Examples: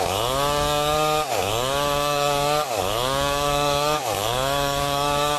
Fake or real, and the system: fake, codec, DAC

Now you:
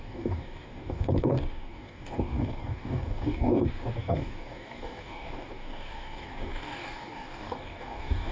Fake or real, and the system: fake, codec, DAC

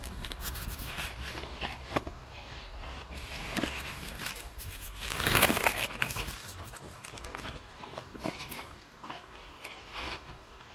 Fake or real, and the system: fake, codec, DAC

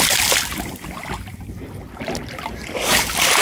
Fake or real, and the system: real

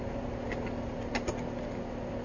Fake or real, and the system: real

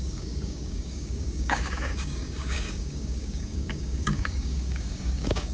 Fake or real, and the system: fake, codec, DAC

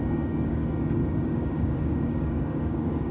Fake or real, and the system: fake, codec, DAC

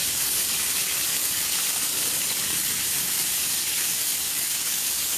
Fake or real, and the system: fake, codec, DAC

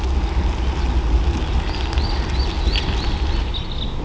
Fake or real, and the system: real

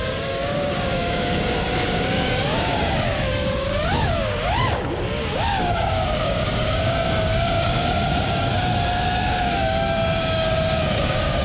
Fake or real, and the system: fake, codec, DAC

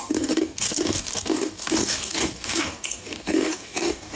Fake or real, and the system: fake, codec, DAC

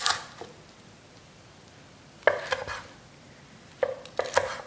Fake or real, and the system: real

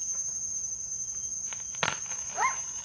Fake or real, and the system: real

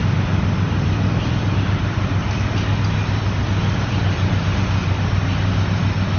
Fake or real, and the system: real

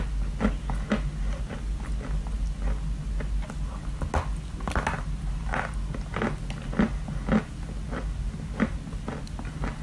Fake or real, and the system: real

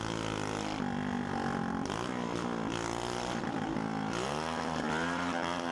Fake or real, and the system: real